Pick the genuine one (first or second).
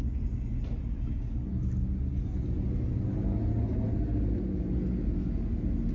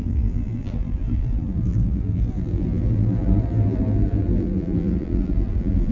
first